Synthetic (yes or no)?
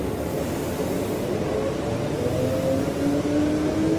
no